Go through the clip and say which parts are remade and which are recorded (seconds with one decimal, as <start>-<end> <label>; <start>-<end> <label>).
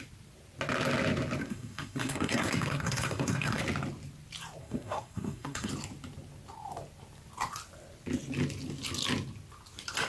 0.0-1.4 recorded; 1.4-3.6 remade; 3.6-4.6 recorded; 4.6-5.7 remade; 5.7-10.1 recorded